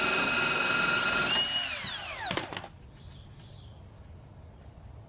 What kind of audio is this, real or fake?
real